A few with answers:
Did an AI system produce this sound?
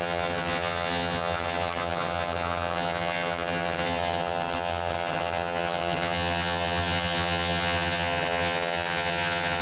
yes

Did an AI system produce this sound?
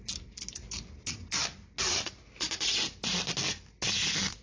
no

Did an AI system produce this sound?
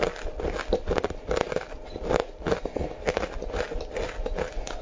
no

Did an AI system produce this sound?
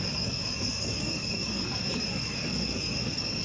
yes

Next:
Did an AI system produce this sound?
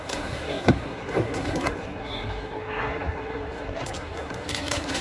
yes